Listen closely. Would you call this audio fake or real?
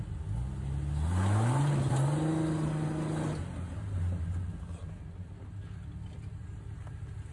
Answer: real